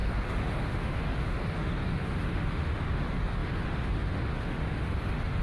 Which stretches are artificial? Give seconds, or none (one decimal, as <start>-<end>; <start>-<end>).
0.0-5.4